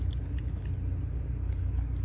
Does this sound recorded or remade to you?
recorded